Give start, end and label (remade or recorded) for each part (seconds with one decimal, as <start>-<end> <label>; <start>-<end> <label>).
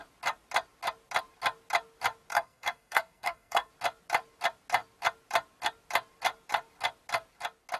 0.0-2.3 recorded; 2.3-3.7 remade; 3.7-7.8 recorded